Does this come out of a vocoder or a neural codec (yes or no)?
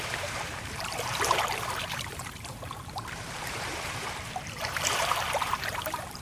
yes